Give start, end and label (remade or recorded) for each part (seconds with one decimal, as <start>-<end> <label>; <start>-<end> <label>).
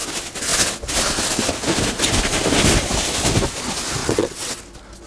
0.0-4.0 recorded; 4.0-4.6 remade; 4.6-5.1 recorded